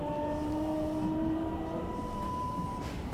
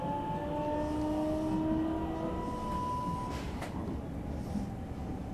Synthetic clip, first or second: first